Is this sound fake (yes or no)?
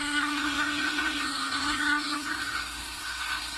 yes